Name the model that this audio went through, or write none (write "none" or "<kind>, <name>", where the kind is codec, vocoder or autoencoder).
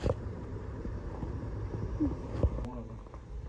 vocoder, BigVGAN v2